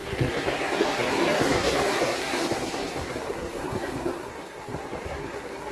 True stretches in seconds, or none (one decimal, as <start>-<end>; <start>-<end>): none

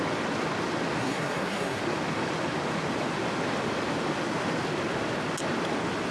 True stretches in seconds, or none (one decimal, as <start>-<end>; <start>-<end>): 0.0-1.0; 1.8-6.1